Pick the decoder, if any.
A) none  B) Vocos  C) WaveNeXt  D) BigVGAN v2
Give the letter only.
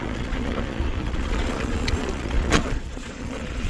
B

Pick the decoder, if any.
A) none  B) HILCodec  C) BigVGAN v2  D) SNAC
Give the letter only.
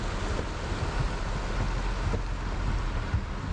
A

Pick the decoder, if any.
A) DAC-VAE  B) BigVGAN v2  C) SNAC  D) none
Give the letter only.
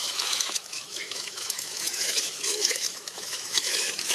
A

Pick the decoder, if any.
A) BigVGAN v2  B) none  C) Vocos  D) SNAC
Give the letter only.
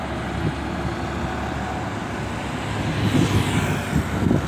B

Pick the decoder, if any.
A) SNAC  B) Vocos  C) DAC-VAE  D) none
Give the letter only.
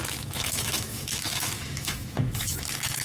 C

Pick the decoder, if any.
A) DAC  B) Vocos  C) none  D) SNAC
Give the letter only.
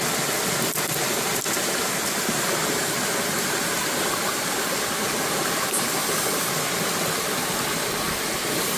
C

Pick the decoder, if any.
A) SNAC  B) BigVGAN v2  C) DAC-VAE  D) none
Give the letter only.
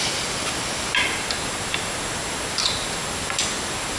D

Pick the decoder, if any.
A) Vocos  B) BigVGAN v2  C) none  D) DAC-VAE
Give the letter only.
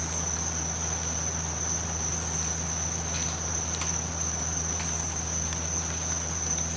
C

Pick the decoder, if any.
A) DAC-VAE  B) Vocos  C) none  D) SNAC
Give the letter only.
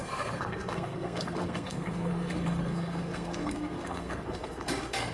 D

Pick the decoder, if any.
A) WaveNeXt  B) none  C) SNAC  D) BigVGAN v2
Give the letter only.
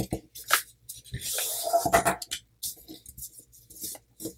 B